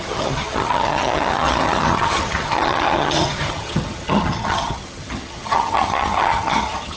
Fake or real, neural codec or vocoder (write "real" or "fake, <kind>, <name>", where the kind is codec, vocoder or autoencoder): fake, vocoder, HiFi-GAN